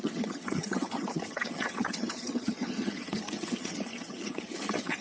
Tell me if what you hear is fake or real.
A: fake